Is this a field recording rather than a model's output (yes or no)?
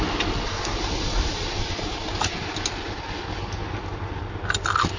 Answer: yes